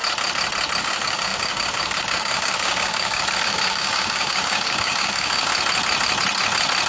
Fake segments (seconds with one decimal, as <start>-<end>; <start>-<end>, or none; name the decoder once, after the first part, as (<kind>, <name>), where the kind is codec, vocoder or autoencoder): 0.8-5.5 (codec, DAC)